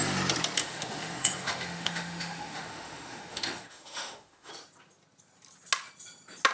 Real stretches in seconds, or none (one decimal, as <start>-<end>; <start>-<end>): 0.0-0.6; 4.5-6.5